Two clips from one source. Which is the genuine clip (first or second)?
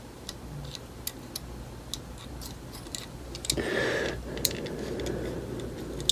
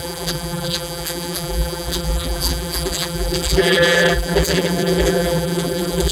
first